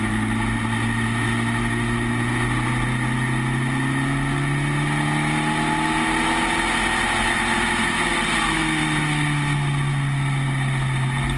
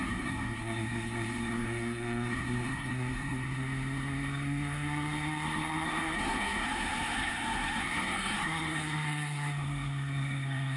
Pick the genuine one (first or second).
first